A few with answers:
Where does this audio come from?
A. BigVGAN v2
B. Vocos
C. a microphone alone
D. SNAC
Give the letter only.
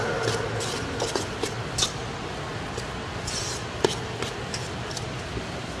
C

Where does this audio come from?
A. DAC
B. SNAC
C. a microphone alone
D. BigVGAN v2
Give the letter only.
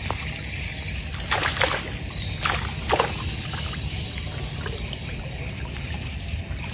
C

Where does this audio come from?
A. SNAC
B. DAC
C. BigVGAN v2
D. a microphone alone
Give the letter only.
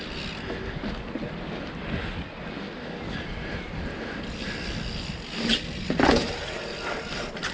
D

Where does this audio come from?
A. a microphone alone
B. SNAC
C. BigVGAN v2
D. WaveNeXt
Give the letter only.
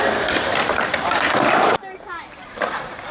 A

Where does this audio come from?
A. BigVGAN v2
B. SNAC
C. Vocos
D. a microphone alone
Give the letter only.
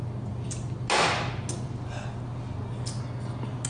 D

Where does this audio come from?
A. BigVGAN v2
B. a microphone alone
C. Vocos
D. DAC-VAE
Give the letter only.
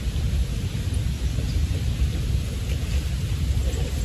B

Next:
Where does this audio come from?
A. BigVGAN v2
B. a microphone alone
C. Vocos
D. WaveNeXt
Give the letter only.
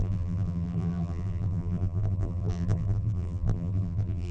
A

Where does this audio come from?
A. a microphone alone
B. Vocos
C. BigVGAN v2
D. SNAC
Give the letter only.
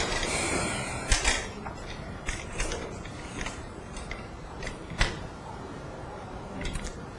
C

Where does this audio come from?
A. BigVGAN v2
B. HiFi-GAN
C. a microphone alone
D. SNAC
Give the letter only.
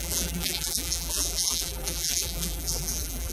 A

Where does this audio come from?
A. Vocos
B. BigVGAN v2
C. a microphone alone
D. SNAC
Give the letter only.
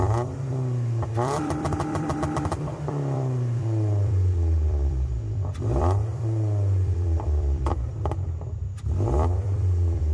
B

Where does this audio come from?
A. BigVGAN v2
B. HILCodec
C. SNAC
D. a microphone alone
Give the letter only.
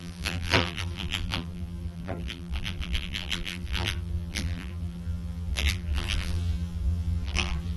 A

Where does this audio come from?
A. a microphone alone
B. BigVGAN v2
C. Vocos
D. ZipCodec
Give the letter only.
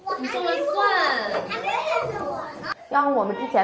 B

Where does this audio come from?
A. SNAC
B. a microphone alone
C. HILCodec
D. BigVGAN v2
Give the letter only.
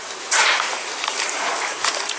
D